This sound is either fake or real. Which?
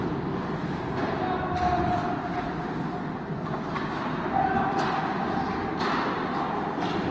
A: real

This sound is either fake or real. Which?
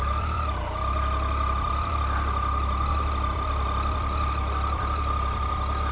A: fake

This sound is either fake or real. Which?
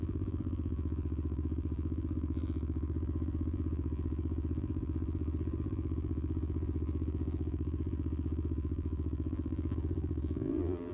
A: fake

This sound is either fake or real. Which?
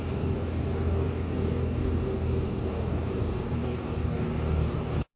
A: fake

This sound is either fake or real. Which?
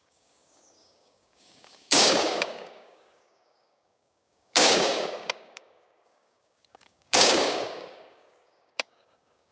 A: fake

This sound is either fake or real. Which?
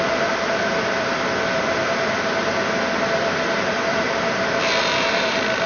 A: fake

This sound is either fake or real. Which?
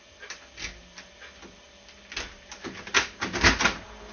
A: real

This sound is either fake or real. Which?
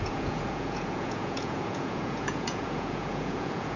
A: fake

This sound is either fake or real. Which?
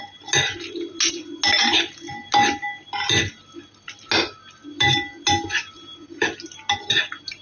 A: real